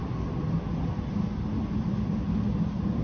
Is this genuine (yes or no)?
yes